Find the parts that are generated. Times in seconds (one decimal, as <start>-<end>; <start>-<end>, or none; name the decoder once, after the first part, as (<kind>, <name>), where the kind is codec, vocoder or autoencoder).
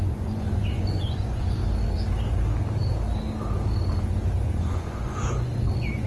0.0-1.6 (vocoder, Vocos); 4.4-6.1